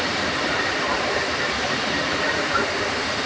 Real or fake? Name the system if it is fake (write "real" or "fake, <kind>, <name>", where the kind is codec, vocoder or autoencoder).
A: real